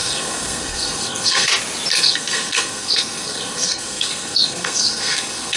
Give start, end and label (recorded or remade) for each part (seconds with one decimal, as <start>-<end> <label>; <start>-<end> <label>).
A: 0.0-1.5 remade; 1.5-1.9 recorded; 1.9-5.6 remade

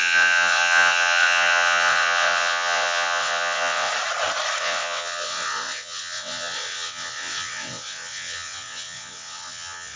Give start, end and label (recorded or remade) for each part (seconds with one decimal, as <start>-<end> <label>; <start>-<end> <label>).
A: 0.0-3.9 remade; 3.9-4.6 recorded; 4.6-10.0 remade

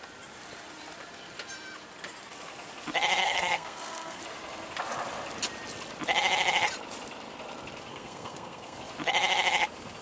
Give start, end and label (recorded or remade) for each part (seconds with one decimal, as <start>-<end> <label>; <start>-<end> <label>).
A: 0.0-3.2 recorded; 3.2-4.2 remade; 4.2-7.9 recorded; 7.9-8.8 remade; 8.8-10.0 recorded